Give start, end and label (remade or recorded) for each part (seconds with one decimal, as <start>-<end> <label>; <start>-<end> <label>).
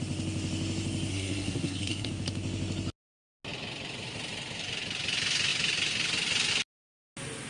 0.0-1.1 recorded; 1.1-2.1 remade; 2.1-7.5 recorded